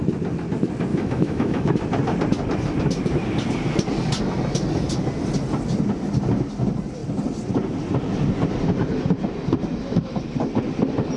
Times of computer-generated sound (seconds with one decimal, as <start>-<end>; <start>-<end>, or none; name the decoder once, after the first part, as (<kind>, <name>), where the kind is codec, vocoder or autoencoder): 0.9-1.7 (autoencoder, DAC-VAE)